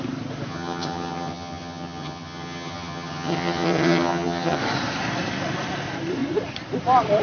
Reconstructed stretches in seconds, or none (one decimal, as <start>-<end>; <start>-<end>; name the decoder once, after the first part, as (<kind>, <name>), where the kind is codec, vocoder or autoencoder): 0.5-4.6 (vocoder, HiFi-GAN)